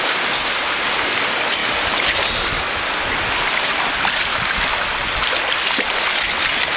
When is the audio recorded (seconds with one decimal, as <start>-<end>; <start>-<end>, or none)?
0.0-1.6; 3.0-6.8